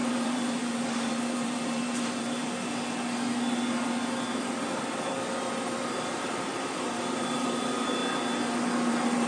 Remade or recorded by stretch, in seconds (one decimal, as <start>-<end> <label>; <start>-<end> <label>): 0.0-2.4 remade; 2.4-5.8 recorded; 5.8-8.0 remade; 8.0-8.9 recorded; 8.9-9.3 remade